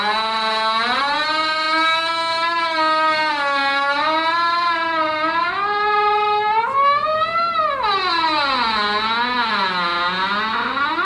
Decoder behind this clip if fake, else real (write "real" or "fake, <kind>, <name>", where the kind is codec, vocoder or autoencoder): real